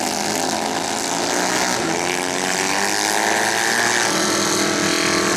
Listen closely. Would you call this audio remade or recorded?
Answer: recorded